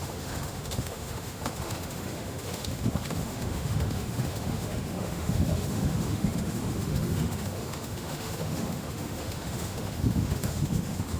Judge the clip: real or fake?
fake